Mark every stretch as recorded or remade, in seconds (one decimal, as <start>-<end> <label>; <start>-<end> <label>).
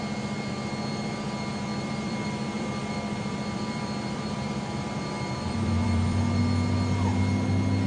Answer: 0.0-1.7 recorded; 1.7-6.4 remade; 6.4-7.9 recorded